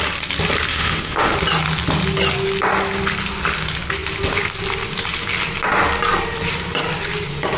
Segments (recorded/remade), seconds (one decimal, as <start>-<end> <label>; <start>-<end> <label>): 0.0-0.7 recorded; 0.7-1.3 remade; 1.3-7.6 recorded